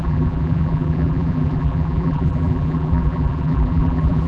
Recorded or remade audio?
remade